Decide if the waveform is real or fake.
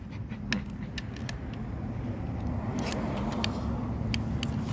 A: real